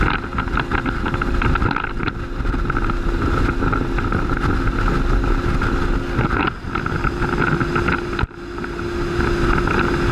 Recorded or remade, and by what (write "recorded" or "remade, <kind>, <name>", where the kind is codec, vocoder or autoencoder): recorded